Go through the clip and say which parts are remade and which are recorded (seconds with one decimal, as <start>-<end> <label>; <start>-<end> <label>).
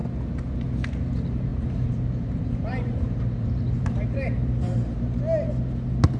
0.0-1.5 recorded; 1.5-5.2 remade; 5.2-6.2 recorded